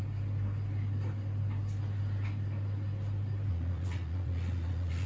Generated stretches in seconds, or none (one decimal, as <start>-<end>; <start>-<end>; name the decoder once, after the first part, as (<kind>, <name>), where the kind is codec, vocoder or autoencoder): 3.5-5.1 (vocoder, Vocos)